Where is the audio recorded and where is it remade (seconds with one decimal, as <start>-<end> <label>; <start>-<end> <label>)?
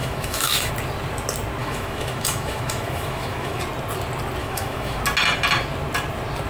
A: 0.0-0.7 remade; 0.7-1.6 recorded; 1.6-3.6 remade; 3.6-4.4 recorded; 4.4-5.0 remade; 5.0-6.5 recorded